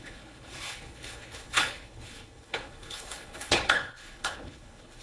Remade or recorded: remade